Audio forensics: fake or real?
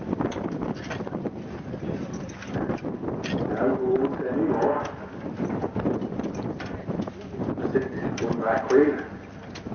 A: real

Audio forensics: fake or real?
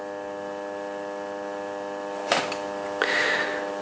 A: real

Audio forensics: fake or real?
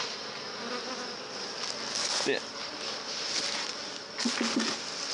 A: real